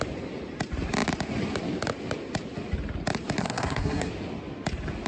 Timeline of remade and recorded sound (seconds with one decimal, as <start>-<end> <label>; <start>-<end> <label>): 0.0-3.4 recorded; 3.4-4.1 remade; 4.1-5.1 recorded